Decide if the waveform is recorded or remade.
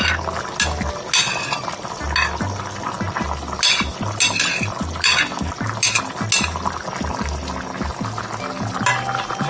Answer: recorded